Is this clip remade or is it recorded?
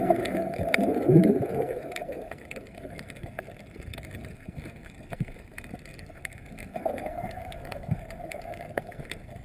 remade